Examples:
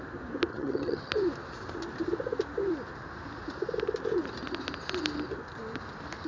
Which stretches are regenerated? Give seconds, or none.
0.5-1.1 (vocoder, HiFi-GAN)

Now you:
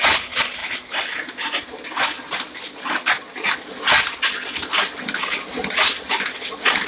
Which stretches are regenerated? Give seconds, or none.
none

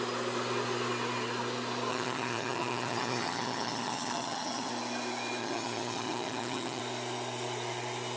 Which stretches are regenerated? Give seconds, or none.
1.9-4.7 (vocoder, HiFi-GAN); 5.4-6.8